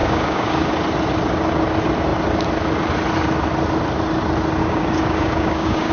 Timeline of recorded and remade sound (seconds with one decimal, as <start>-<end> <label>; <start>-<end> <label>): 0.0-0.7 remade; 0.7-4.6 recorded; 4.6-5.9 remade